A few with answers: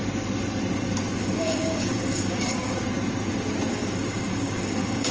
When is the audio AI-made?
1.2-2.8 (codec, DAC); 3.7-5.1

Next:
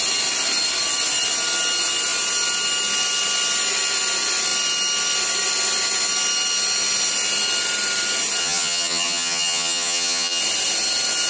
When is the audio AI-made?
8.4-10.4 (vocoder, HiFi-GAN)

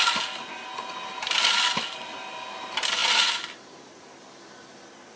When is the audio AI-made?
none

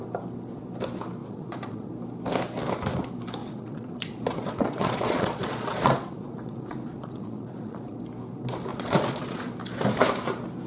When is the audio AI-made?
1.2-1.9 (vocoder, Vocos); 3.4-8.0; 8.7-9.4

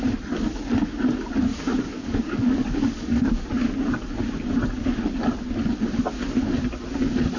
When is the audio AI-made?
1.5-3.5 (codec, DAC)

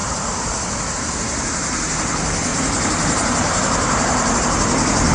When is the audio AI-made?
0.0-0.6 (vocoder, BigVGAN v2); 1.3-1.8; 2.5-4.4